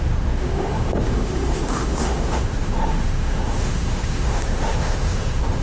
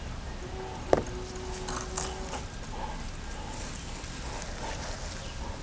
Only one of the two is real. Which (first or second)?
second